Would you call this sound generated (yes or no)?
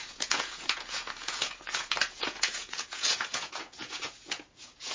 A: yes